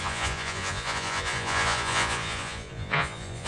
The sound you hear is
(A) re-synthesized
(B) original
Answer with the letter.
A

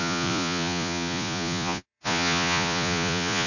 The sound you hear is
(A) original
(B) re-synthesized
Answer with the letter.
B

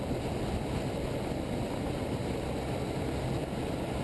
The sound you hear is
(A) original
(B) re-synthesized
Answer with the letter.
A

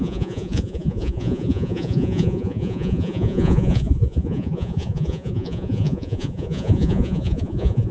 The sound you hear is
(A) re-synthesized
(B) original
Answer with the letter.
A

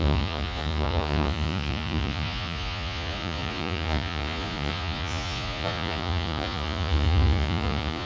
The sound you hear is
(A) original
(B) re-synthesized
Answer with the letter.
B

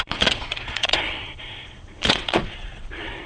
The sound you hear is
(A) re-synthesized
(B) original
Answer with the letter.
A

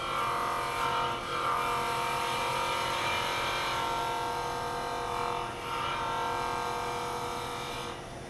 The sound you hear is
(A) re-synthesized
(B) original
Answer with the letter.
B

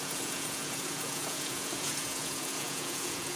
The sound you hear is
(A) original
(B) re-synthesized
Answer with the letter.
B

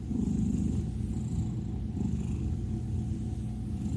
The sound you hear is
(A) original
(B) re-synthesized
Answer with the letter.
A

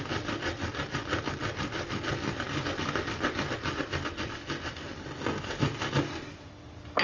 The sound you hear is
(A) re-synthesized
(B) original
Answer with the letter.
B